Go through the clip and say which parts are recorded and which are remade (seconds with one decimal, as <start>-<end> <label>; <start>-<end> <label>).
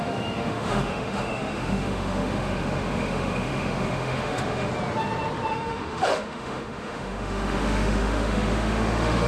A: 0.0-4.7 remade; 4.7-5.5 recorded; 5.5-9.3 remade